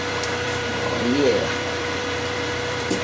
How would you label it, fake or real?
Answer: fake